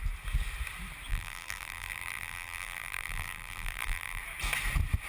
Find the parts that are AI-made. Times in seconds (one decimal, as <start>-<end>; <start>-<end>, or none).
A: 1.1-4.2